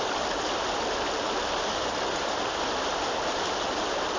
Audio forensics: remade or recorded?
recorded